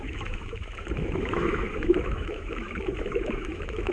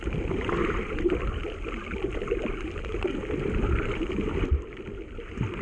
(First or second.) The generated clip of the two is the first